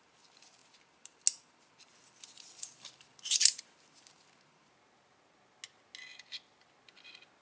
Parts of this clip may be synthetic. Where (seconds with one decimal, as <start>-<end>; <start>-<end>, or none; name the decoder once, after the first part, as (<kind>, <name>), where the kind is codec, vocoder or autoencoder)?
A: 6.1-6.7 (vocoder, BigVGAN v2)